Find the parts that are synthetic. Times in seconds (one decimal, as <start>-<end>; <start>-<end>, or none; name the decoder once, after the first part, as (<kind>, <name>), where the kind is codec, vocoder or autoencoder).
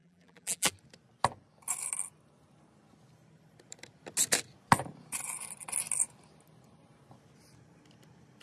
0.0-0.7 (vocoder, BigVGAN v2)